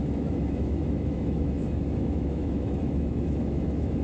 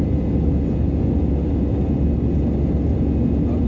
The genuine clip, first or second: second